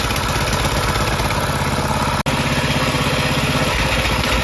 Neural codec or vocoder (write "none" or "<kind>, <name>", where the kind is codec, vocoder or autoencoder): none